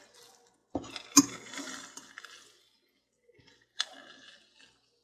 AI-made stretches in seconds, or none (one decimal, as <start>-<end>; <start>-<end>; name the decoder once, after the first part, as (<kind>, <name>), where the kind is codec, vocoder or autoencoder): none